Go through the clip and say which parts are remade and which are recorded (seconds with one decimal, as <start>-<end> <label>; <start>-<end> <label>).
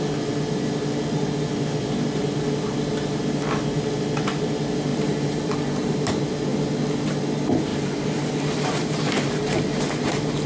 0.0-4.9 recorded; 4.9-6.1 remade; 6.1-7.7 recorded; 7.7-10.5 remade